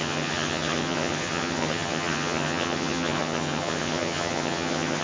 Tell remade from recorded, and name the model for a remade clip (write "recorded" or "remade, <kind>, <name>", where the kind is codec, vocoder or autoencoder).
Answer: remade, vocoder, HiFi-GAN